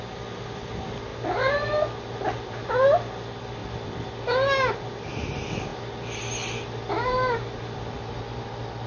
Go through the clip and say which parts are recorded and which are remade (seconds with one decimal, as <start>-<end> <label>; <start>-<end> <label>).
0.0-8.9 recorded